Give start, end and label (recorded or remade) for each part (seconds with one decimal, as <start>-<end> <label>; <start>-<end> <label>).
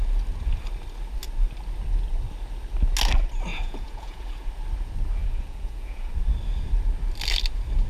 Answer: 0.0-3.5 recorded; 3.5-4.5 remade; 4.5-5.2 recorded; 5.2-6.1 remade; 6.1-7.9 recorded